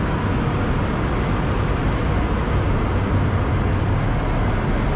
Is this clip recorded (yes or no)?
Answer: yes